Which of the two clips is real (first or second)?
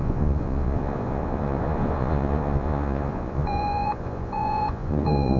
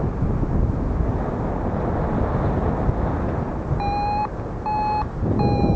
second